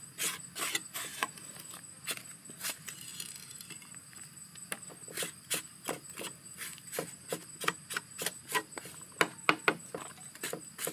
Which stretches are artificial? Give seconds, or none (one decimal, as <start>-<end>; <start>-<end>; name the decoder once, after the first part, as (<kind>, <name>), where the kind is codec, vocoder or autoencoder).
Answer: none